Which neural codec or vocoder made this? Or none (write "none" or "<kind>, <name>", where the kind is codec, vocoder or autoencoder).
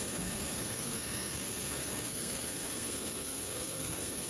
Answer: codec, SNAC